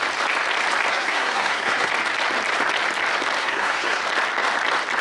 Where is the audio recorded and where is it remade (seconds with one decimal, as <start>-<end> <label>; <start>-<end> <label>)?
0.0-0.9 recorded; 0.9-1.9 remade; 1.9-3.4 recorded; 3.4-4.0 remade; 4.0-5.0 recorded